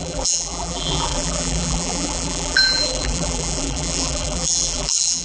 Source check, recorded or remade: remade